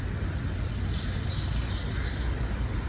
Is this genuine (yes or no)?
yes